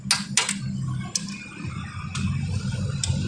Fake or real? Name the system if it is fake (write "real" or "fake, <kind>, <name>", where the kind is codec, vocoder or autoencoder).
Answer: real